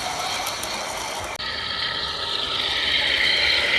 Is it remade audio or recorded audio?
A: recorded